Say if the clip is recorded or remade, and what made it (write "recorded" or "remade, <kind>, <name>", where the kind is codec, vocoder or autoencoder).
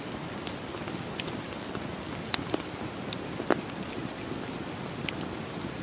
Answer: recorded